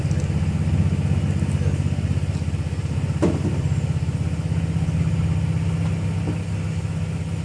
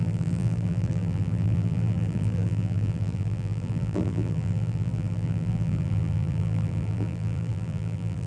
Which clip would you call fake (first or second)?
second